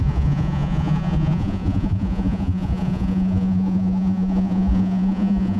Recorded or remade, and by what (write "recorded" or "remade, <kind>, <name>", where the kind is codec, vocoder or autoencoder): remade, vocoder, Vocos